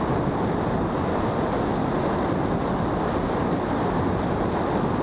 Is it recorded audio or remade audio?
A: recorded